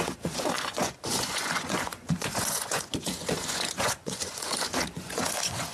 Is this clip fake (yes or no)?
yes